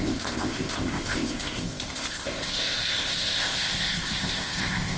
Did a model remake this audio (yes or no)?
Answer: yes